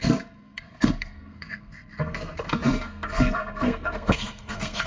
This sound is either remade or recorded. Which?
remade